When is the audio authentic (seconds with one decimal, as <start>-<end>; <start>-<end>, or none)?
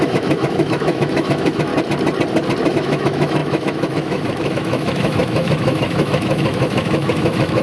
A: 1.7-2.7